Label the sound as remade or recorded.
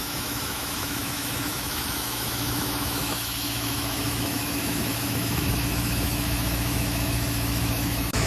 remade